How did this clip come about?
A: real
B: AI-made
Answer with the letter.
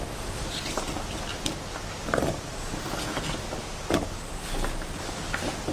A